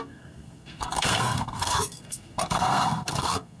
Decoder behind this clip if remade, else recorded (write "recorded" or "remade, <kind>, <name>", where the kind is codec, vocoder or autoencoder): remade, codec, SNAC